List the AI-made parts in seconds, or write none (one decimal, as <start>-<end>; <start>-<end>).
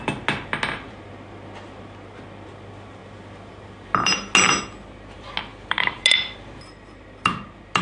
5.5-6.0